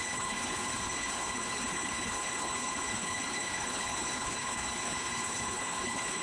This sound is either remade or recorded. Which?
remade